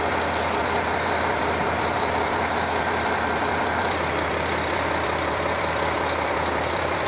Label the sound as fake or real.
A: fake